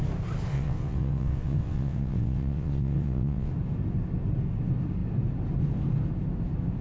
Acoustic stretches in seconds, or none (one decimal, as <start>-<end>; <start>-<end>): 0.0-0.5; 3.5-6.8